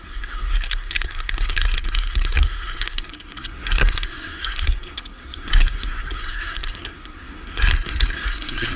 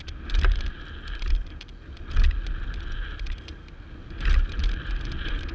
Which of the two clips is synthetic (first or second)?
first